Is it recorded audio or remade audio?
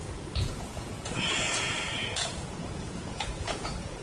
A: remade